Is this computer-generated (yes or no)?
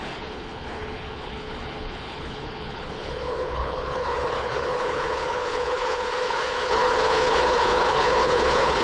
yes